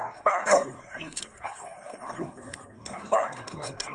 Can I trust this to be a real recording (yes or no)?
no